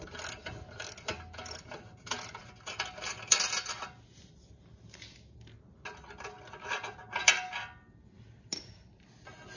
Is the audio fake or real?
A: real